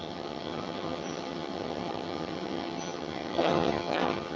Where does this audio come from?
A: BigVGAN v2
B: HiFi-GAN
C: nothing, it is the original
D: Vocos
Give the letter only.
B